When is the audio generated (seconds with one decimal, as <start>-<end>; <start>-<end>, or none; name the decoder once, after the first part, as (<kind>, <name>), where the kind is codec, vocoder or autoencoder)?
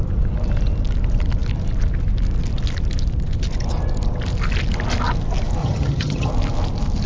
5.6-6.3 (vocoder, HiFi-GAN)